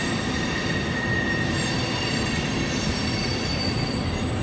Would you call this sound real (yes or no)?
yes